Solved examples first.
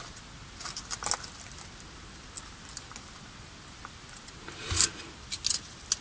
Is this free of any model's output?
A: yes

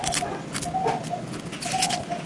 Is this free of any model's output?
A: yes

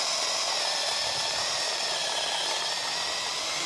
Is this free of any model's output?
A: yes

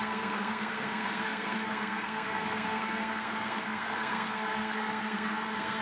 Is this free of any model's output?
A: no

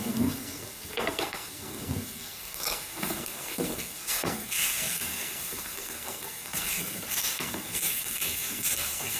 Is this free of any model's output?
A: no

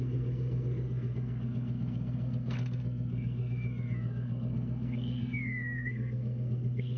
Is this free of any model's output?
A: no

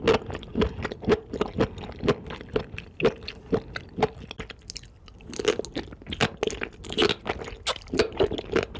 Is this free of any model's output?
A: yes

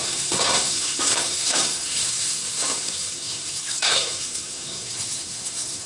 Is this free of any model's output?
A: no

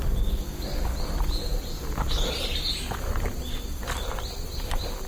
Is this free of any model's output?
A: yes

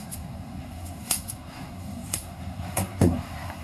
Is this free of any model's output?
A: no